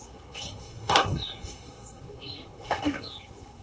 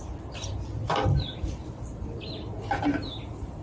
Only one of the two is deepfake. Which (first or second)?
first